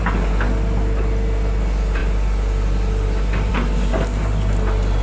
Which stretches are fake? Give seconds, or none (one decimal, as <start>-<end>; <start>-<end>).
none